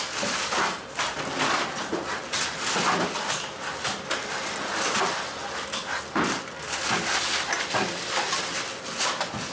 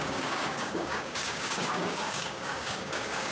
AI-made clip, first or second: second